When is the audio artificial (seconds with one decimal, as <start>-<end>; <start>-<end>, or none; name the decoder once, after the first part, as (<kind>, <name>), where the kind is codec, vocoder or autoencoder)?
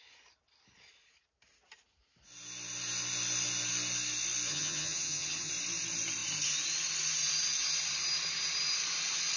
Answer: 4.5-5.5 (vocoder, HiFi-GAN)